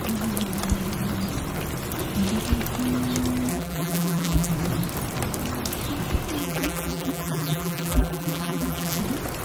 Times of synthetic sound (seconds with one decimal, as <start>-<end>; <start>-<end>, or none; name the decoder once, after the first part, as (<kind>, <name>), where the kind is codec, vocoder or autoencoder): 3.5-4.5 (vocoder, BigVGAN v2); 6.4-9.0